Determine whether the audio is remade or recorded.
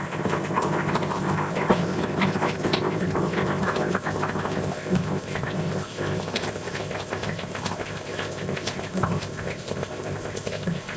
remade